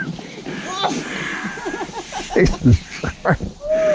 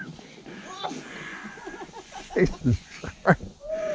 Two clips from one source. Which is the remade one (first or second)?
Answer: second